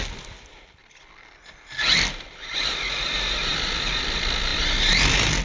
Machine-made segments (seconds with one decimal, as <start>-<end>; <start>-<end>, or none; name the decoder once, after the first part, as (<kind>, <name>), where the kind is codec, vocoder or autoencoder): none